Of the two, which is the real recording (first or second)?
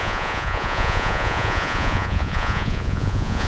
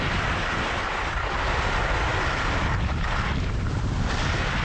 second